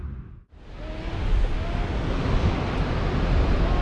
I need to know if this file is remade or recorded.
recorded